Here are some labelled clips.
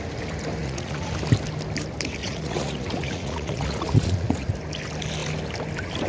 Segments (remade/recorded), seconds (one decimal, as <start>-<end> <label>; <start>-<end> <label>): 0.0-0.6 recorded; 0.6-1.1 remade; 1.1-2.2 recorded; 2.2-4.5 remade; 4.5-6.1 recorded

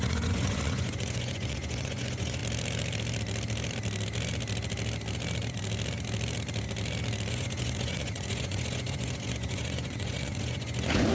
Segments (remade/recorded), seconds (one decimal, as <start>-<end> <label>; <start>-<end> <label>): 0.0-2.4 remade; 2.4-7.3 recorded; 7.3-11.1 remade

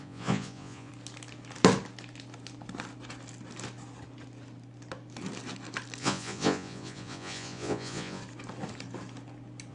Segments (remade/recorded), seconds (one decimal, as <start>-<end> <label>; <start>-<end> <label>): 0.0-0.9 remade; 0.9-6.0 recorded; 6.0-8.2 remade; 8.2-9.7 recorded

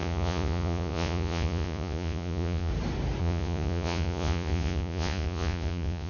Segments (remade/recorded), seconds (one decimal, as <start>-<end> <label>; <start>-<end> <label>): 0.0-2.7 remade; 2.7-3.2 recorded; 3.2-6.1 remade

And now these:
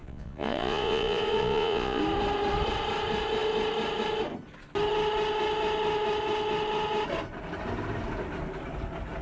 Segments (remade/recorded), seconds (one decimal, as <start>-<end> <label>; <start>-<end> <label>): 0.0-2.0 remade; 2.0-9.2 recorded